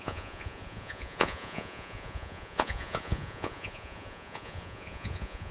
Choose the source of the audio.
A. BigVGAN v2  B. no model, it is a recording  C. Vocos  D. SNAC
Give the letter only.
C